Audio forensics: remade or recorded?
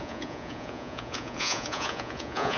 remade